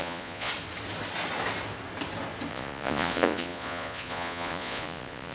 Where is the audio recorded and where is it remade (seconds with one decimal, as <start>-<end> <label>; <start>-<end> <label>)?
0.0-0.5 remade; 0.5-2.5 recorded; 2.5-5.3 remade